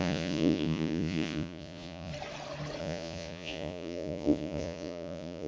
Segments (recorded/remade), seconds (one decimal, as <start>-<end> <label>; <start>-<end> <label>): 0.0-2.1 remade; 2.1-2.8 recorded; 2.8-5.5 remade